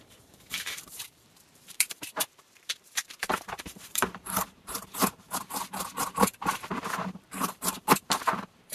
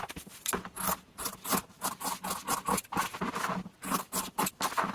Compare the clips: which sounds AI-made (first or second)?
first